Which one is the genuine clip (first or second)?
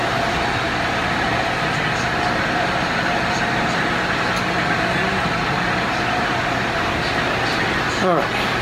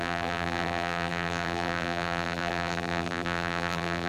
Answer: first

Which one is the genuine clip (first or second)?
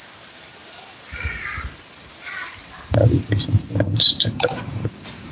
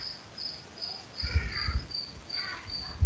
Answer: second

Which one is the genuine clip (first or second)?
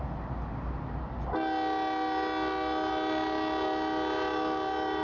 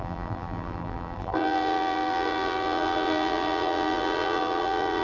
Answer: first